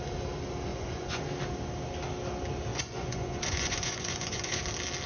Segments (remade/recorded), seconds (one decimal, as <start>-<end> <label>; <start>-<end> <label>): 0.0-0.7 recorded; 0.7-1.2 remade; 1.2-2.7 recorded; 2.7-4.6 remade; 4.6-5.1 recorded